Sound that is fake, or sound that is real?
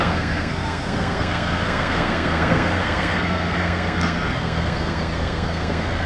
fake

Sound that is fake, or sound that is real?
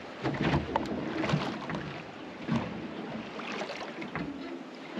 real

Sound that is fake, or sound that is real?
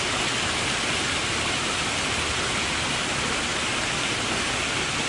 real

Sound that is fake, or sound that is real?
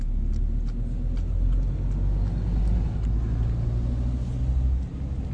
real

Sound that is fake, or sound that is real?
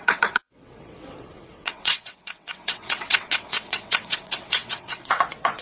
fake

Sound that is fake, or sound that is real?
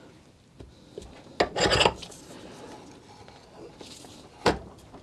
real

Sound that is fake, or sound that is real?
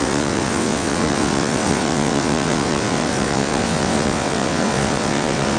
fake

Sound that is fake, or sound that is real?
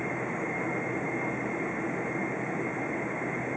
real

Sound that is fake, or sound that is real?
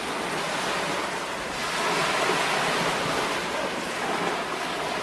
real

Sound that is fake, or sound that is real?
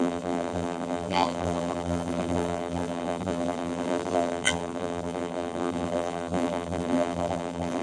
fake